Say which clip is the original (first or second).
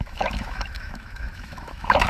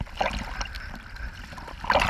second